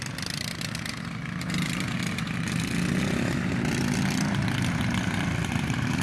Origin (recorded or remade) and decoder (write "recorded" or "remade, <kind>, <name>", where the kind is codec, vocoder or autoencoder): recorded